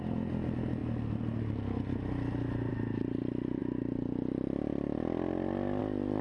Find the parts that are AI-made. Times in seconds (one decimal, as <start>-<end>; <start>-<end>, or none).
none